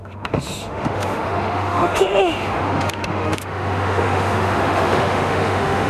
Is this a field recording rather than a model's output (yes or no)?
no